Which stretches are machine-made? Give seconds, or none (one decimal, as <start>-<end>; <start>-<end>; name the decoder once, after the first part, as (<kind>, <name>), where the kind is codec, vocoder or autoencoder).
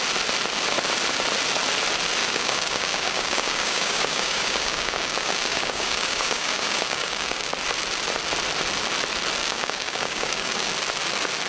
2.2-7.5 (codec, DAC); 9.4-10.7